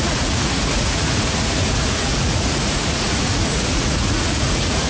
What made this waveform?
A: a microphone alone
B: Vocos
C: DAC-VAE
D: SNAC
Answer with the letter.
B